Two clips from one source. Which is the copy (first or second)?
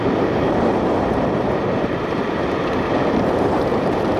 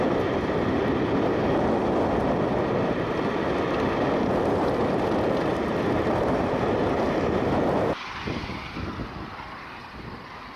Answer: first